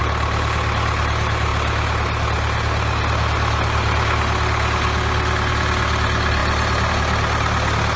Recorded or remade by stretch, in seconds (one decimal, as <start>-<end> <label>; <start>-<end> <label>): 0.0-8.0 recorded